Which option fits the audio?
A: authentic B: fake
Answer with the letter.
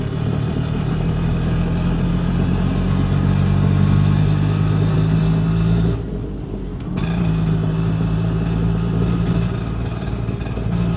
A